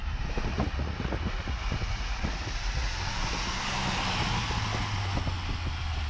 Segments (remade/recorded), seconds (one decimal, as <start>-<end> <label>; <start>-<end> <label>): 0.0-0.5 recorded; 0.5-3.5 remade; 3.5-6.1 recorded